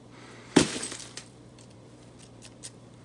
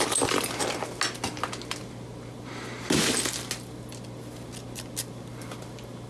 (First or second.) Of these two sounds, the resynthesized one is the first